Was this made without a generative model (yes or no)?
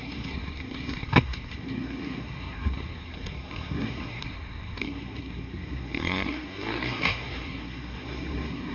no